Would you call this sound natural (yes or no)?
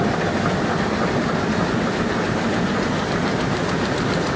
yes